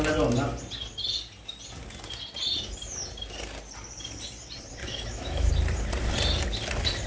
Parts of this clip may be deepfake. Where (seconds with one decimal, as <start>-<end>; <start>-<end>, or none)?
4.8-5.5